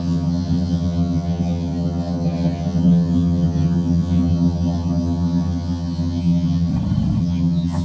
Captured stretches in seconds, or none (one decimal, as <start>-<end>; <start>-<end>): 6.7-7.2